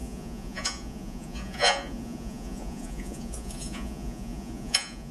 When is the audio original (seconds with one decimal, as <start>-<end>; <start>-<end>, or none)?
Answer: none